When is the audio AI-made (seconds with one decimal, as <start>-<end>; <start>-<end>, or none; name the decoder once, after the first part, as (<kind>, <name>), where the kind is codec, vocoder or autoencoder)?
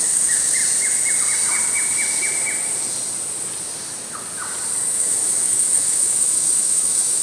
0.0-0.6 (autoencoder, DAC-VAE); 4.9-7.2